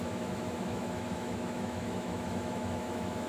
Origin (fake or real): fake